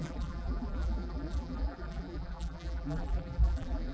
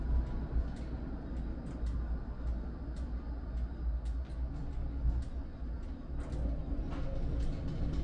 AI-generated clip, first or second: first